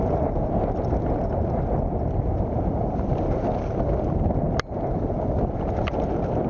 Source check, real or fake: real